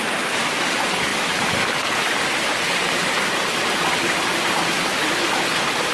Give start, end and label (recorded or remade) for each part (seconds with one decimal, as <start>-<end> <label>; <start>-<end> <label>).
0.0-5.9 remade